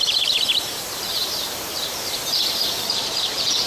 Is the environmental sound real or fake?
fake